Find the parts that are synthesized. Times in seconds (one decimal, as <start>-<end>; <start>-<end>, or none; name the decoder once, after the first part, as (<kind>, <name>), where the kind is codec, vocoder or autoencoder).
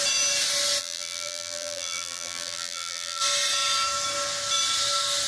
0.8-3.2 (vocoder, BigVGAN v2)